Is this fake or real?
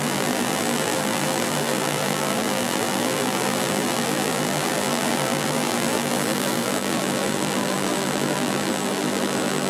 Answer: fake